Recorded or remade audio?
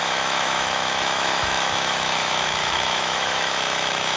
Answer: remade